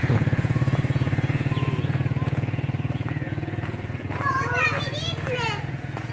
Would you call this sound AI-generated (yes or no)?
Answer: yes